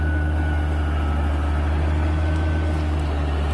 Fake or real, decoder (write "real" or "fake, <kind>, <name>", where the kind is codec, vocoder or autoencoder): real